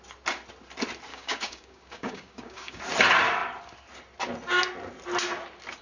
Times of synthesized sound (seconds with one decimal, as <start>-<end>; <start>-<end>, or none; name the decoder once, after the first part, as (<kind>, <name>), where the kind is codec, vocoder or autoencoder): 1.1-2.8 (codec, DAC)